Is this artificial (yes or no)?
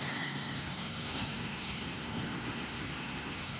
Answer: yes